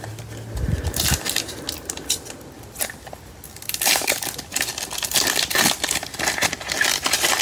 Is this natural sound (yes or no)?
yes